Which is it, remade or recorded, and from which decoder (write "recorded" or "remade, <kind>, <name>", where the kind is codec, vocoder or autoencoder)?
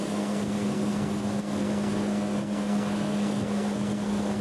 remade, codec, SNAC